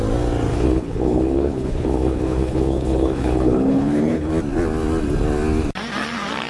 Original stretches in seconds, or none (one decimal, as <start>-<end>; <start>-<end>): 0.0-0.5; 4.3-6.5